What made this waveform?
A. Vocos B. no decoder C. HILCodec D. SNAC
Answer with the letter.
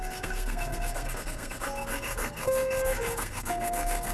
D